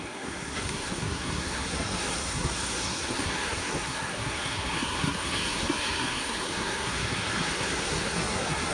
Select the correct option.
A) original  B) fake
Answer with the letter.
B